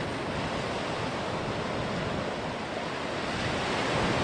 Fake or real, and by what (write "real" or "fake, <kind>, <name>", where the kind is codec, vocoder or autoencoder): real